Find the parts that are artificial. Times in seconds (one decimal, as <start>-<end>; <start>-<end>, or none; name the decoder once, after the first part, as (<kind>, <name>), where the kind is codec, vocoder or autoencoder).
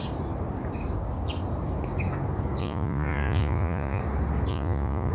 2.6-4.0 (vocoder, Vocos); 4.5-5.1